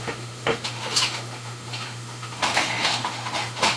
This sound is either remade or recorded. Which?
remade